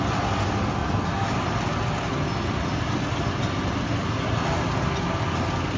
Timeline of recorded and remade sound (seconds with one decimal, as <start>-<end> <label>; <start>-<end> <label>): 0.0-5.8 recorded